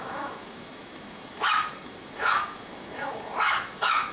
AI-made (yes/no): yes